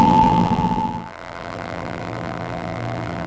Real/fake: fake